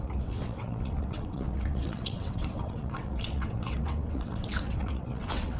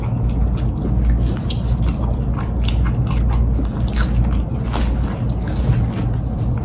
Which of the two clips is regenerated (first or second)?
first